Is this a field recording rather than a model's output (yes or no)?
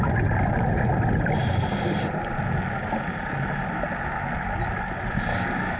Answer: yes